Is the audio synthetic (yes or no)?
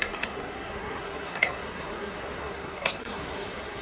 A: yes